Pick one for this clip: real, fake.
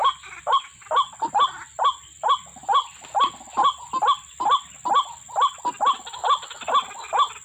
real